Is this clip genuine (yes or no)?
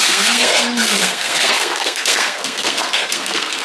no